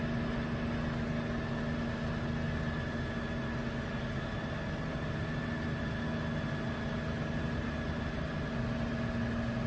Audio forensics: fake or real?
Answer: real